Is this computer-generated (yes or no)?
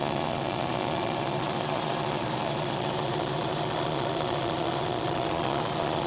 yes